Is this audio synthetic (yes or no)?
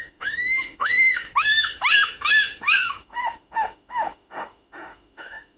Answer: yes